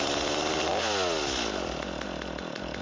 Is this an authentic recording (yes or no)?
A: yes